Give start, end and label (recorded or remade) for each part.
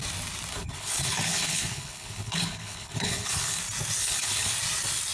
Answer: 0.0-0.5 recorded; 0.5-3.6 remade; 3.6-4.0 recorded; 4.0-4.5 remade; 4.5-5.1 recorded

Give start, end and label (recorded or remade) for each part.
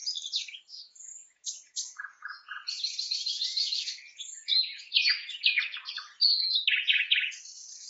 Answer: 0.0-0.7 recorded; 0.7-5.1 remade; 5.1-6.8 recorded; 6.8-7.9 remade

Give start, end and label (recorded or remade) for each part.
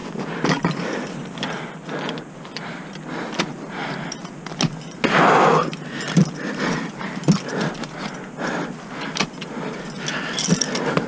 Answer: 0.0-11.1 recorded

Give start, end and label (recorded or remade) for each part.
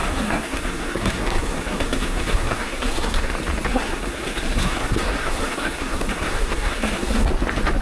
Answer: 0.0-3.3 remade; 3.3-3.7 recorded; 3.7-7.3 remade; 7.3-7.8 recorded